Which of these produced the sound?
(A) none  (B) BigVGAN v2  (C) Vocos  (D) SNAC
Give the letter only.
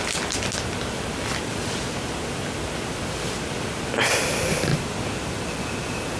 A